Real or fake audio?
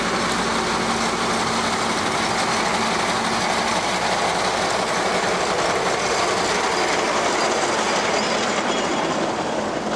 real